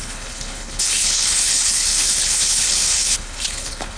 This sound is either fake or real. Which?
fake